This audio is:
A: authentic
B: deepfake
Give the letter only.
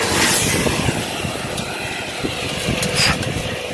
A